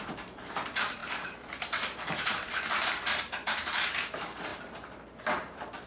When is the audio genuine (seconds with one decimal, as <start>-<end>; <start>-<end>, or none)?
none